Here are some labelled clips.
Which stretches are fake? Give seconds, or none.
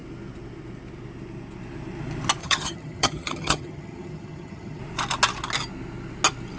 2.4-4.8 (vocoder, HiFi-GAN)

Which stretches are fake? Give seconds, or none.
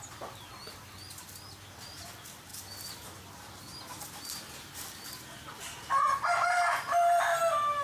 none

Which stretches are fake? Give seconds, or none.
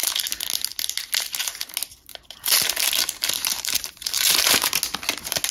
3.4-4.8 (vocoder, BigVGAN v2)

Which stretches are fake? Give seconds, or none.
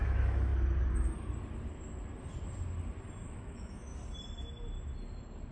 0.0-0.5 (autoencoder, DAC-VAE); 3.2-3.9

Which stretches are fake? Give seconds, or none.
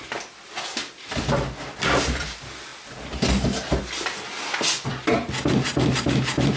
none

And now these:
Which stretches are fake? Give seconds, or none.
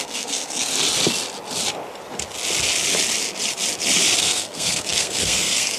0.0-0.7 (codec, SNAC); 4.2-5.8